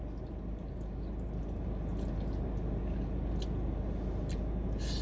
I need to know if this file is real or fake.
real